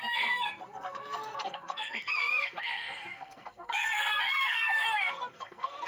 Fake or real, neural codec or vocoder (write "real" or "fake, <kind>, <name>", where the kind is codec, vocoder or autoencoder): fake, codec, SNAC